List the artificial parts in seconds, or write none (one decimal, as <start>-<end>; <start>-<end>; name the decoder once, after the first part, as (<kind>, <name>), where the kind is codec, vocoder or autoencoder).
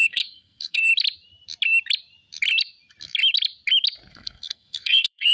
0.0-0.9 (codec, SNAC); 4.1-5.3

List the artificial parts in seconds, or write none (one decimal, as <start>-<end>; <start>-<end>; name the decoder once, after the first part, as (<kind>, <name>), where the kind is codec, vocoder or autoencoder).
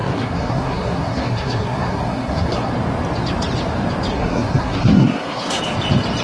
0.0-2.7 (codec, SNAC); 4.1-5.6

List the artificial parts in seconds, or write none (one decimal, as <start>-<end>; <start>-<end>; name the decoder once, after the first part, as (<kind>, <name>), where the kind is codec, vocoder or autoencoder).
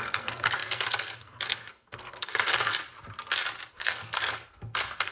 0.0-2.7 (codec, SNAC); 3.7-5.1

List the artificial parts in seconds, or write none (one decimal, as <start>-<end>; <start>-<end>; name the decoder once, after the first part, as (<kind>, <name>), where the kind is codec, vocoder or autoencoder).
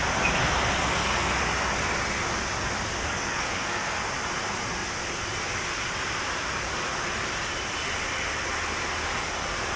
0.8-1.4 (codec, SNAC); 3.0-4.0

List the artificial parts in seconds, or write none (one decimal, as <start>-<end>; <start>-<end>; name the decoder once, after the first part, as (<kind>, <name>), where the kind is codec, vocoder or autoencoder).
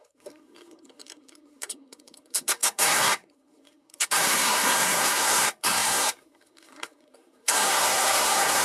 0.0-8.6 (codec, SNAC)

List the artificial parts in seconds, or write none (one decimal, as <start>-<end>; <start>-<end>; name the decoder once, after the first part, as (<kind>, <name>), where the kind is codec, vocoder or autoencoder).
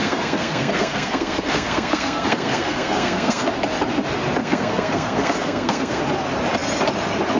0.0-3.5 (codec, SNAC); 4.4-6.0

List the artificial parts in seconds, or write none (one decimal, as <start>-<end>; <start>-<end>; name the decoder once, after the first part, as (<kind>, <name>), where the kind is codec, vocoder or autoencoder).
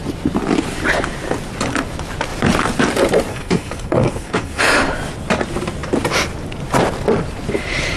3.3-4.6 (codec, SNAC)